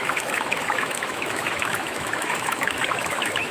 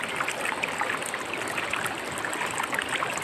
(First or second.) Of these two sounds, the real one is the second